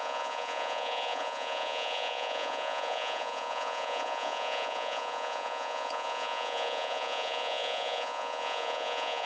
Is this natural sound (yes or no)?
no